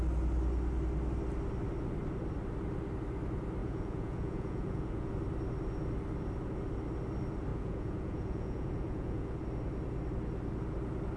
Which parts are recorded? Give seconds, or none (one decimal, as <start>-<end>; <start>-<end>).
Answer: 0.0-3.6; 5.1-7.5; 9.4-11.2